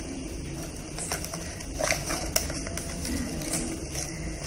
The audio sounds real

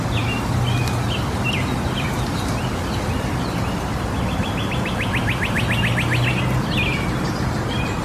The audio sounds real